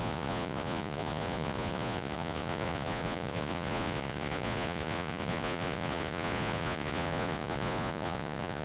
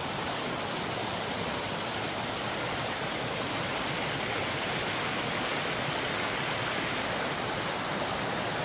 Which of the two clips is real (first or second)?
second